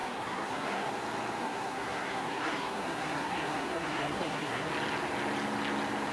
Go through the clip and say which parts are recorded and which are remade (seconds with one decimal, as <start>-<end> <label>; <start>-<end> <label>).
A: 0.0-0.9 remade; 0.9-1.4 recorded; 1.4-4.7 remade; 4.7-6.1 recorded